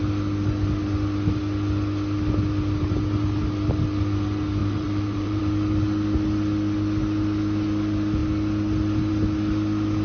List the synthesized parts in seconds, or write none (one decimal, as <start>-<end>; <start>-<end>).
4.6-5.4